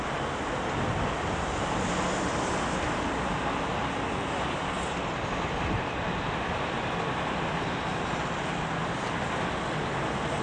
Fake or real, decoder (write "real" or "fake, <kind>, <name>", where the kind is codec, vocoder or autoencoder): real